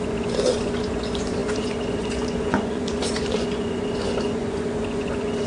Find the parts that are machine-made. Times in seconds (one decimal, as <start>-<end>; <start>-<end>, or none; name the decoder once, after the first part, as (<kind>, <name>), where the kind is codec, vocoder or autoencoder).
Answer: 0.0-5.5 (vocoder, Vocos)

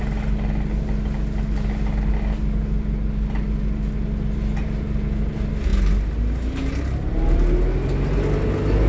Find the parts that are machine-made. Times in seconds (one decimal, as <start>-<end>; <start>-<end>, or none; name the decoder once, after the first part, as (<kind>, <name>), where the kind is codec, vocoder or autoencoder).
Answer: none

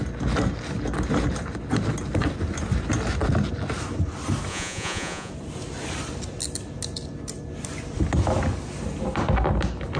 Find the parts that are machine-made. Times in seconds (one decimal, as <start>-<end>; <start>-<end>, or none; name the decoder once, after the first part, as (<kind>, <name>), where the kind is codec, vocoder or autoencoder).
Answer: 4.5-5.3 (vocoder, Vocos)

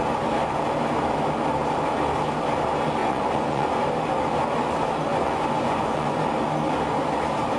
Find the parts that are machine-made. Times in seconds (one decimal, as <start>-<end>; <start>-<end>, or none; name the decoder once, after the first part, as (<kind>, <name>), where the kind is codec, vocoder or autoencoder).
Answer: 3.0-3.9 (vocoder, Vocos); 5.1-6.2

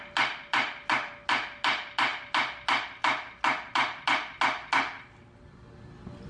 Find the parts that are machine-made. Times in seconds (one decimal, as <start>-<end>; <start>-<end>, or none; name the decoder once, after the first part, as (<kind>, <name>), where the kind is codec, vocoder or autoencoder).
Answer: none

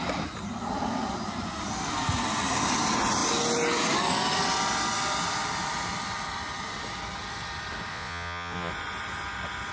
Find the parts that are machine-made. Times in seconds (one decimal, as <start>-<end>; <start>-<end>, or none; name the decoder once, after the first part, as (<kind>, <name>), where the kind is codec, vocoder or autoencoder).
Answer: 7.9-8.7 (vocoder, Vocos)

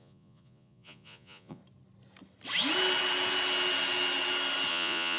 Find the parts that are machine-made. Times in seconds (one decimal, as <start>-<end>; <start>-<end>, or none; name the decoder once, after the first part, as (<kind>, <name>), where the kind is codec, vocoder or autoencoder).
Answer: 0.0-1.6 (vocoder, Vocos); 4.7-5.2